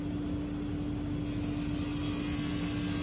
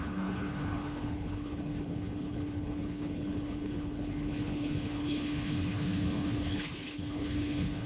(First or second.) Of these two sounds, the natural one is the first